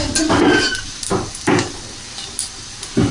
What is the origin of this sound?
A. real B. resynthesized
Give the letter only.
A